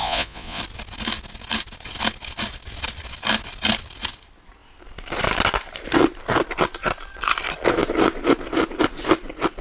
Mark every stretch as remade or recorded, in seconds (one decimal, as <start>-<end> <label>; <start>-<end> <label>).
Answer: 0.0-0.6 remade; 0.6-9.6 recorded